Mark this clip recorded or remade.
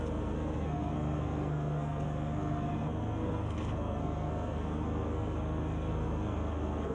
remade